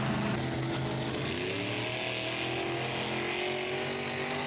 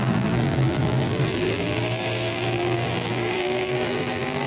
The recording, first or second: first